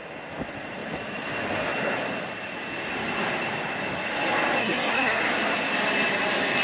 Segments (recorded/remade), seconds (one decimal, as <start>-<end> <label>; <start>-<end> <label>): 0.0-4.6 recorded; 4.6-5.2 remade; 5.2-6.6 recorded